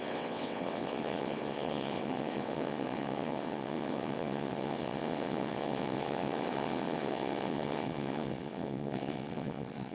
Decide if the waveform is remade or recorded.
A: remade